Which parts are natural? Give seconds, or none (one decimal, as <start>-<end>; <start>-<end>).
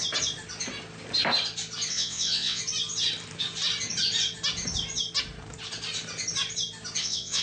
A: 0.0-1.9; 2.6-7.0